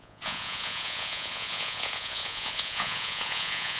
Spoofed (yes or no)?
yes